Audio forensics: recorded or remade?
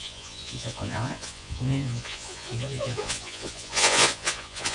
remade